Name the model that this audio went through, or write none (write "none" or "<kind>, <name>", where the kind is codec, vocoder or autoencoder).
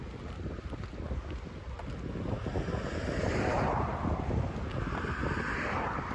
none